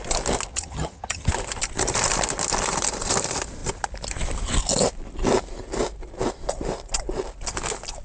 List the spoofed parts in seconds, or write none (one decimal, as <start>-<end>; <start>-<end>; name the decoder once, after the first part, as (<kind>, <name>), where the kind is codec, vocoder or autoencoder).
0.5-1.3 (vocoder, HiFi-GAN)